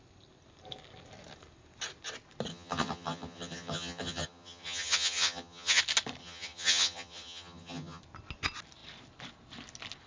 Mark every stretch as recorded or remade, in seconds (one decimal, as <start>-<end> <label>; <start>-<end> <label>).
0.0-2.5 recorded; 2.5-5.8 remade; 5.8-6.2 recorded; 6.2-8.0 remade; 8.0-10.1 recorded